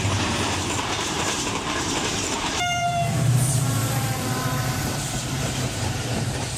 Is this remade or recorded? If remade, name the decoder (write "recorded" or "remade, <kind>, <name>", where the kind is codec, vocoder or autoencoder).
remade, vocoder, BigVGAN v2